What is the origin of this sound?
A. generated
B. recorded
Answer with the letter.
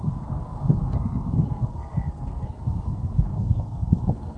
A